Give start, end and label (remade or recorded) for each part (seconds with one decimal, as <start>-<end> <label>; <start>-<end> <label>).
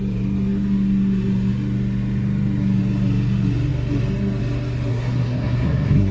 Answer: 0.0-4.9 recorded; 4.9-6.1 remade